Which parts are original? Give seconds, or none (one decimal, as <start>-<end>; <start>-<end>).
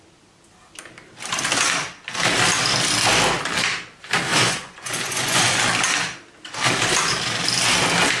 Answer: 0.0-4.3; 5.6-8.2